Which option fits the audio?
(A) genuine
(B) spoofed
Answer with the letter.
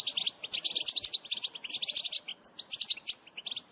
A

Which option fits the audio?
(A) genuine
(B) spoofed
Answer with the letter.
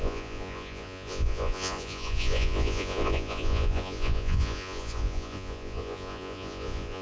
B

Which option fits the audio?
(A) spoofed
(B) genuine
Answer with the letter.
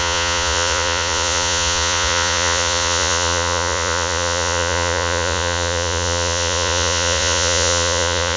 A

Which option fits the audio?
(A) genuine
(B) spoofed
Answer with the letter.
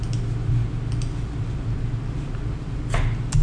A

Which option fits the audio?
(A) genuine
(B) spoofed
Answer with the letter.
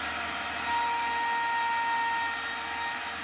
A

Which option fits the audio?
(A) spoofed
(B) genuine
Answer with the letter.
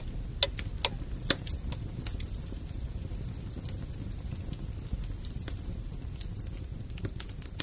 B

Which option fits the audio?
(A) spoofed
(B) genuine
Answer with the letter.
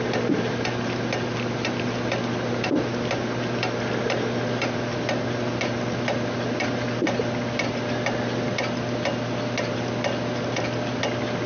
B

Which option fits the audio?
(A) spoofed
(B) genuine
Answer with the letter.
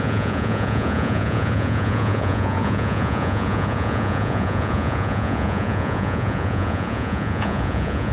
A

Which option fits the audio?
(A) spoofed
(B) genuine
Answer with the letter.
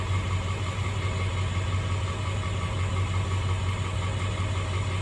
B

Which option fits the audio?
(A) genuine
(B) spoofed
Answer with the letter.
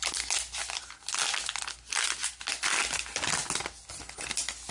A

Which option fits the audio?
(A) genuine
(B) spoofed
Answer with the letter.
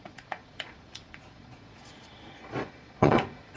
B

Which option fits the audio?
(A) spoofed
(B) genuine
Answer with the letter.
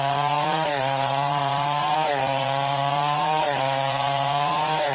A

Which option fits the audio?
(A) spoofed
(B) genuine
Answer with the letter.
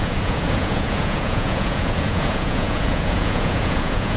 A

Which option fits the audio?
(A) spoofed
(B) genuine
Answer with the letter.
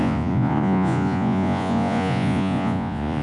A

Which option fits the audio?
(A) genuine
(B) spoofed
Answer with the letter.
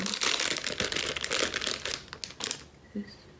A